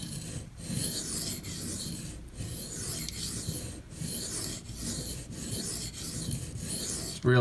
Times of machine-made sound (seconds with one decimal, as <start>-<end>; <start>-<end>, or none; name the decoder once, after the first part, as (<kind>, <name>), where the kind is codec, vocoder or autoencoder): none